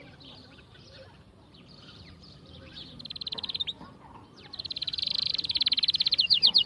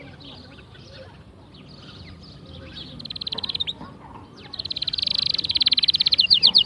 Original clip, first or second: second